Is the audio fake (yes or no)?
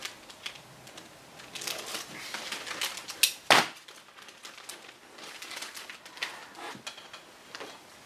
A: no